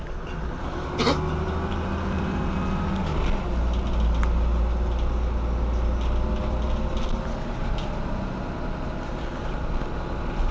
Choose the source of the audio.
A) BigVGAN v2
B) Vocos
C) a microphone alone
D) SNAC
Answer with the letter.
C